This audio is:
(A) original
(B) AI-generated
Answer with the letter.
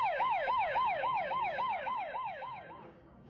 B